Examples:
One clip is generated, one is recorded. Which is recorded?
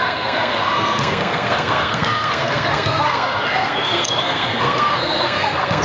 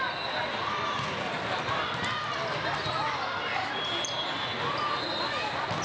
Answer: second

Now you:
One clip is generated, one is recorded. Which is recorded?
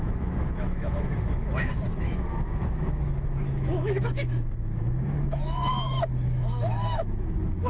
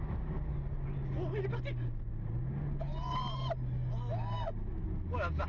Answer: second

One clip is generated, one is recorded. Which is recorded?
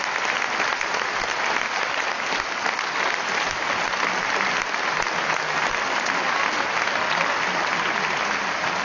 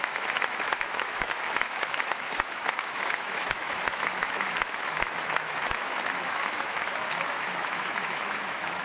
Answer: first